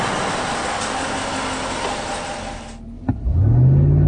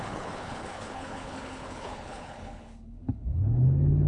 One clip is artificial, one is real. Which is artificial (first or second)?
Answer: second